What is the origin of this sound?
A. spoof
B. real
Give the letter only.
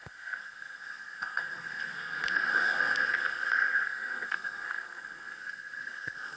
A